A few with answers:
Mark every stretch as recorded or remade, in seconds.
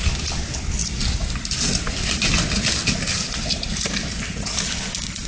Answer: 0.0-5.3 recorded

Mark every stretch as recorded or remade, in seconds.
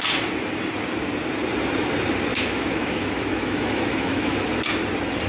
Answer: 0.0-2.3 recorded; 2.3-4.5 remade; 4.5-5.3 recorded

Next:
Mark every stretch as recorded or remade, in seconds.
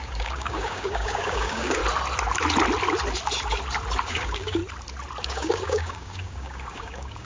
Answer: 0.0-1.8 remade; 1.8-4.1 recorded; 4.1-4.6 remade; 4.6-5.2 recorded; 5.2-7.3 remade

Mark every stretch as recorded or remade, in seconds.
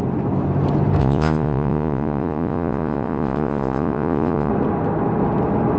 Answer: 0.0-1.0 recorded; 1.0-4.5 remade; 4.5-5.8 recorded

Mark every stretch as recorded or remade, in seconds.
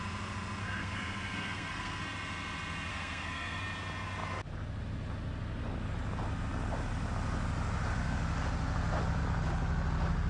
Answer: 0.0-0.6 recorded; 0.6-2.0 remade; 2.0-2.9 recorded; 2.9-3.6 remade; 3.6-10.3 recorded